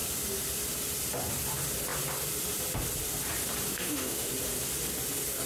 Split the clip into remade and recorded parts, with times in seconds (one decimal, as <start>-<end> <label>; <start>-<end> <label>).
0.0-3.7 recorded; 3.7-4.3 remade; 4.3-5.5 recorded